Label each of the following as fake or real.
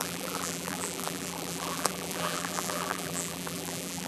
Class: fake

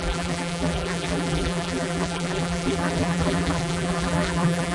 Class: fake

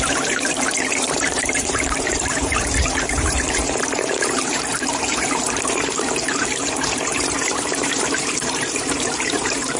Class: fake